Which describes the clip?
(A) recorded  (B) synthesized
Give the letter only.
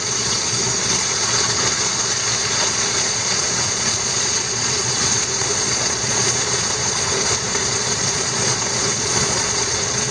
B